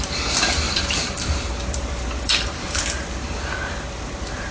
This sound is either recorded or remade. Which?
remade